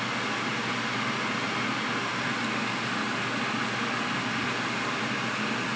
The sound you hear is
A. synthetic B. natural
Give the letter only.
B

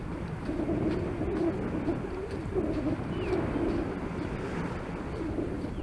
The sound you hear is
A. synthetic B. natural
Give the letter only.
B